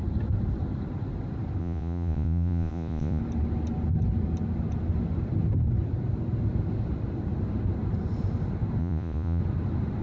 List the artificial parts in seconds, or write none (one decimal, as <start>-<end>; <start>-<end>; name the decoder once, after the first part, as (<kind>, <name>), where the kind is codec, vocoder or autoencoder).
1.6-3.2 (vocoder, Vocos); 8.8-9.4